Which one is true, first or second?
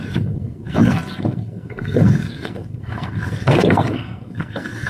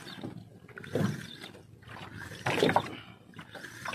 second